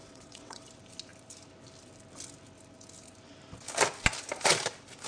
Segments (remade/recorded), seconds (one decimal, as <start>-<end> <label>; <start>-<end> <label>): 0.0-0.7 remade; 0.7-5.1 recorded